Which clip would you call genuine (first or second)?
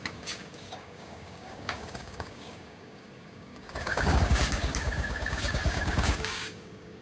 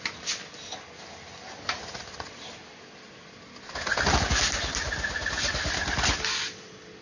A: second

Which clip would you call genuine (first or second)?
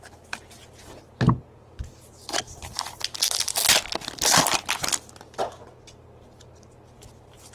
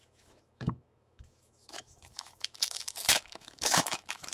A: first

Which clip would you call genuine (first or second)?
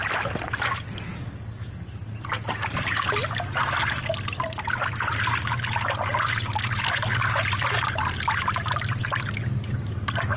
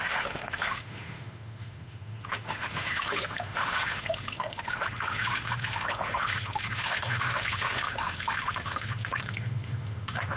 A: first